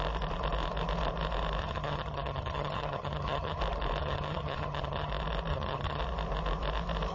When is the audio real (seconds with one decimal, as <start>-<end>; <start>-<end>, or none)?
0.0-1.6; 3.6-4.0; 5.1-5.5; 6.0-7.1